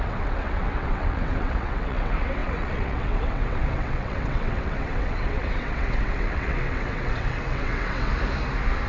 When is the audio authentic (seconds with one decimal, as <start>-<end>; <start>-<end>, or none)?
8.1-8.9